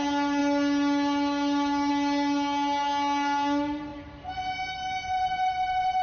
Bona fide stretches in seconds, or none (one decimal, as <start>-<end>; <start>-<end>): 0.0-6.0